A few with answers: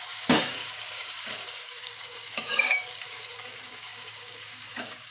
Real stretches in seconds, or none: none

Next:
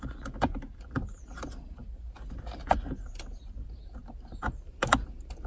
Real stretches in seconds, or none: 0.0-5.5